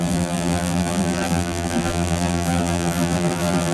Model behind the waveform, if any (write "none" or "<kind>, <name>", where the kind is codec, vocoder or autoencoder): vocoder, BigVGAN v2